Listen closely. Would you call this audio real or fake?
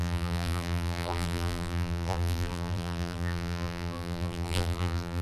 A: fake